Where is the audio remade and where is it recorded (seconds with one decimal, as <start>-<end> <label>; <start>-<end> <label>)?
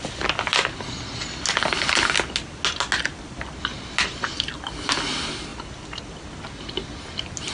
0.0-7.5 recorded